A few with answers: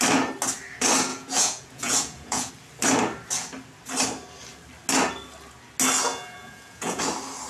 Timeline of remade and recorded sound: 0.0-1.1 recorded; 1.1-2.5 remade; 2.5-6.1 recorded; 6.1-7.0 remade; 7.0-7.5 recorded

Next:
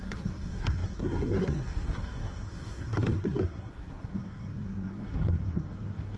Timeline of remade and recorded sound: 0.0-6.2 remade

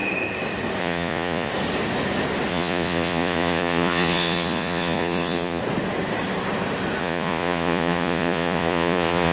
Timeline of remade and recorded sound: 0.0-0.8 recorded; 0.8-1.5 remade; 1.5-2.5 recorded; 2.5-5.6 remade; 5.6-7.0 recorded; 7.0-9.3 remade

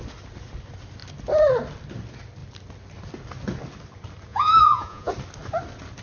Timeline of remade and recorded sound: 0.0-4.3 recorded; 4.3-5.1 remade; 5.1-6.0 recorded

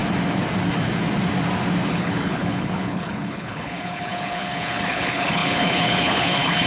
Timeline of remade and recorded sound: 0.0-1.9 recorded; 1.9-6.7 remade